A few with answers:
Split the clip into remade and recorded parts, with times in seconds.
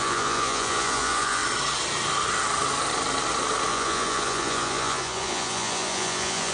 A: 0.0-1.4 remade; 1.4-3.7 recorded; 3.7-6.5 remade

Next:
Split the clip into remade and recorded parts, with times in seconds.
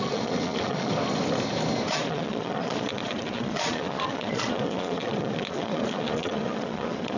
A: 0.0-0.9 remade; 0.9-1.9 recorded; 1.9-7.2 remade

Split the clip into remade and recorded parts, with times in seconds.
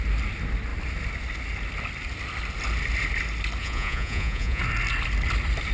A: 0.0-3.6 recorded; 3.6-4.6 remade; 4.6-5.7 recorded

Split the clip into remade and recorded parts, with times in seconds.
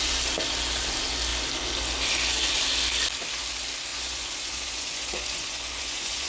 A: 0.0-3.9 recorded; 3.9-6.3 remade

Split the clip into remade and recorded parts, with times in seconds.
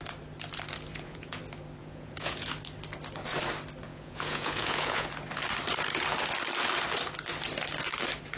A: 0.0-0.9 recorded; 0.9-1.4 remade; 1.4-1.8 recorded; 1.8-2.5 remade; 2.5-3.9 recorded; 3.9-5.1 remade; 5.1-8.4 recorded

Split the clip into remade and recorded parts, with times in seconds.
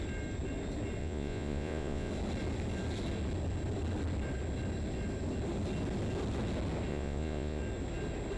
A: 0.0-1.0 recorded; 1.0-2.1 remade; 2.1-6.9 recorded; 6.9-7.6 remade; 7.6-8.4 recorded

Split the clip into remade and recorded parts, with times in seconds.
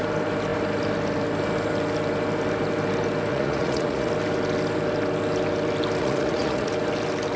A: 0.0-3.3 recorded; 3.3-4.1 remade; 4.1-6.0 recorded; 6.0-6.7 remade; 6.7-7.4 recorded